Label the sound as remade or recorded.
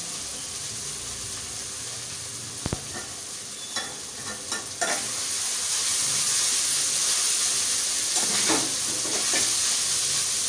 recorded